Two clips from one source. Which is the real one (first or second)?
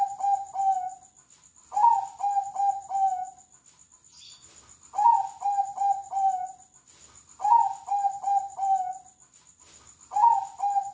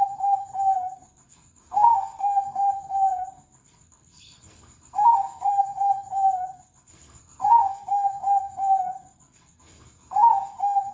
first